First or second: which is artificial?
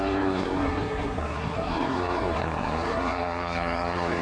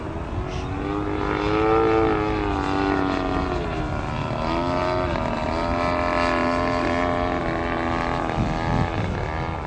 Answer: first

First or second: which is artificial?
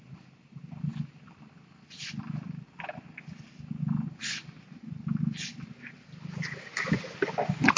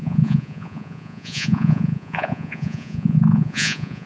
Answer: second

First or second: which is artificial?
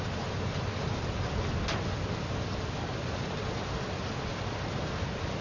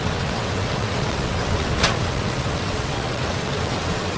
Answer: second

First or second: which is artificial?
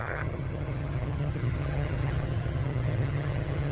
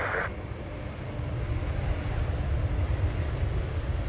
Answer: first